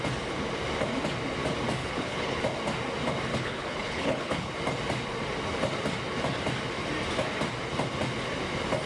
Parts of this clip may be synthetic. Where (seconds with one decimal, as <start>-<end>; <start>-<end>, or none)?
1.8-2.4; 3.3-4.5